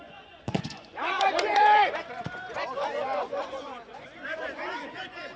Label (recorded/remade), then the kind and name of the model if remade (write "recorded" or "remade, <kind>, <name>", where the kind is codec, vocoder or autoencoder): remade, vocoder, Vocos